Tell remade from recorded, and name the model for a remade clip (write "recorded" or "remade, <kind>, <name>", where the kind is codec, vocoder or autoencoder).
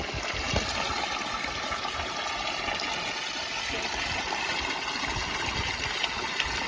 recorded